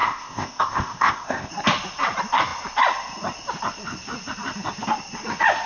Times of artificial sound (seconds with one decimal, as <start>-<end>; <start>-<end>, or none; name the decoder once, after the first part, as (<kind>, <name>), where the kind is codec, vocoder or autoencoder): 0.0-1.5 (codec, ZipCodec)